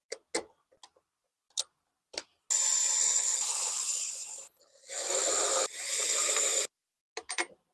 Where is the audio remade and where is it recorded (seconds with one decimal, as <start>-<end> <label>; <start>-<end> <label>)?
0.0-3.0 recorded; 3.0-4.6 remade; 4.6-7.7 recorded